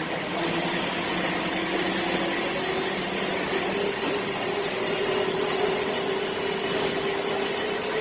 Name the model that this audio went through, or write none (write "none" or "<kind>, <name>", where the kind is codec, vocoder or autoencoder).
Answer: none